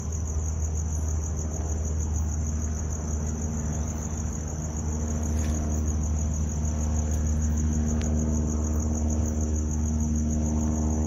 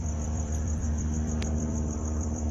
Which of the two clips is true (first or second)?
first